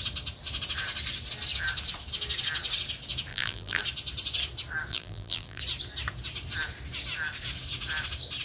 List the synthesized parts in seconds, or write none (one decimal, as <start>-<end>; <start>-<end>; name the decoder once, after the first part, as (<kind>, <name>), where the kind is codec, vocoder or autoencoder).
3.3-3.8 (vocoder, BigVGAN v2); 4.9-5.6